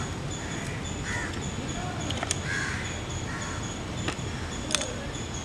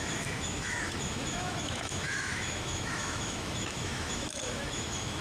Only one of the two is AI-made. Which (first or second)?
second